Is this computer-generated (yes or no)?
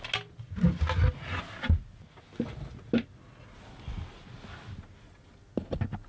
no